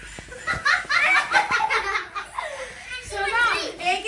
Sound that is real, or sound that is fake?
real